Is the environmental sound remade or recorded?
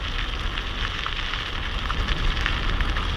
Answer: recorded